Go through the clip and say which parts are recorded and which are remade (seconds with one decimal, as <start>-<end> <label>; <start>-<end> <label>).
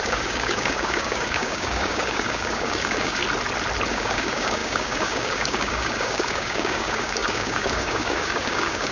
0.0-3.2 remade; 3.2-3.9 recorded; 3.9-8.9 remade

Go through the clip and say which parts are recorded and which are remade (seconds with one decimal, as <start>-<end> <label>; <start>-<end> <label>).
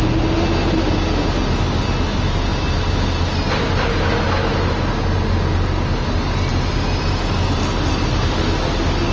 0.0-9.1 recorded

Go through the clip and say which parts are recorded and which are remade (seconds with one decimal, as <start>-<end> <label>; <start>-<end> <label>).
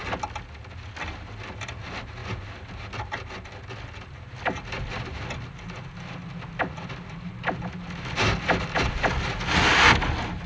0.0-10.5 recorded